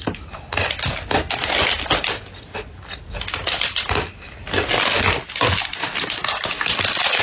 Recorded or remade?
recorded